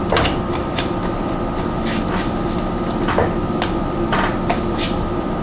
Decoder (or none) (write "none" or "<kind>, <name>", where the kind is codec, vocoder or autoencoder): none